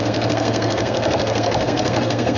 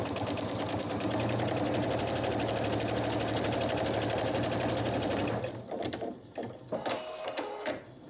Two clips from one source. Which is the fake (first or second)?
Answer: first